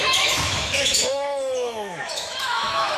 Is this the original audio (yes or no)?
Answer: no